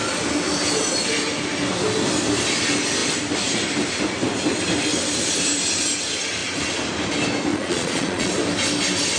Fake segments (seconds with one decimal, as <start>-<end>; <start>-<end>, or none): 7.5-8.3